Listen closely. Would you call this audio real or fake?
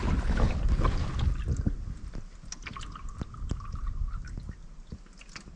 real